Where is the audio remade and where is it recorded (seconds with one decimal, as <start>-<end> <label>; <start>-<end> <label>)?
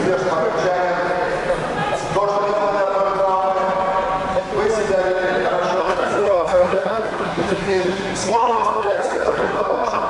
0.0-5.8 recorded; 5.8-10.1 remade